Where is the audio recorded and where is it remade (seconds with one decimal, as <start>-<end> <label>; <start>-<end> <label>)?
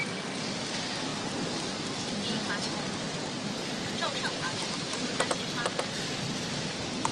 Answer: 0.0-1.1 recorded; 1.1-2.8 remade; 2.8-4.1 recorded; 4.1-4.9 remade; 4.9-7.1 recorded